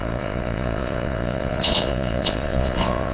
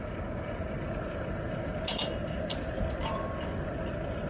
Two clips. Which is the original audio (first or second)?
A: second